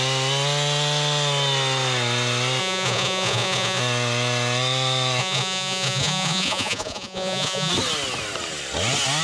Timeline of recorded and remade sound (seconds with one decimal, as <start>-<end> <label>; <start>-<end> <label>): 0.0-2.6 recorded; 2.6-3.8 remade; 3.8-5.2 recorded; 5.2-7.7 remade; 7.7-9.2 recorded